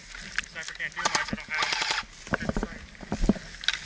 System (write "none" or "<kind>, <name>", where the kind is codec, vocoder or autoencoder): none